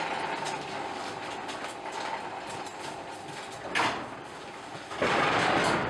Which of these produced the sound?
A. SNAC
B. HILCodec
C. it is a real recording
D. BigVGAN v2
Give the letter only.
C